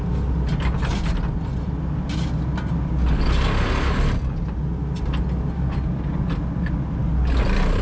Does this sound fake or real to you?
real